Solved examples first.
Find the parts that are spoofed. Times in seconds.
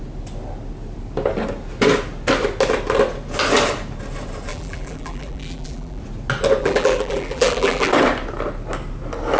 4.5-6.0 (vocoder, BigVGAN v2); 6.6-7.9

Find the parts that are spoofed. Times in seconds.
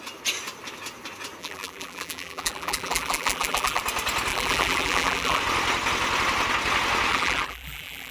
1.4-3.8 (vocoder, BigVGAN v2); 4.3-5.4; 7.1-8.1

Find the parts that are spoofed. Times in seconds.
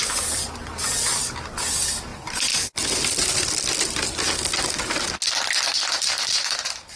none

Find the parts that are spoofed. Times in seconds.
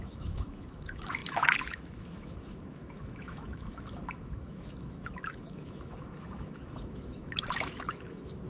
0.0-8.5 (autoencoder, DAC-VAE)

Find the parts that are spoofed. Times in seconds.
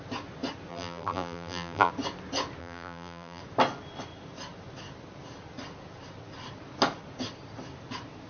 0.7-1.9 (vocoder, BigVGAN v2); 2.6-3.4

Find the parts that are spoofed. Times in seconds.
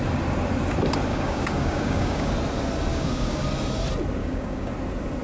1.1-2.3 (codec, DAC); 2.9-3.4; 4.2-4.7